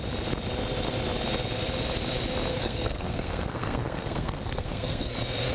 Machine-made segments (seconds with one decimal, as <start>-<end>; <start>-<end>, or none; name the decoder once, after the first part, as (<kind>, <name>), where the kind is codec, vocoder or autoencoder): 2.5-5.1 (codec, SNAC)